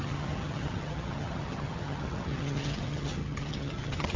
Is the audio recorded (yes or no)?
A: no